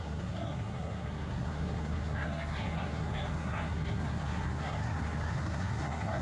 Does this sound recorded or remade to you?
remade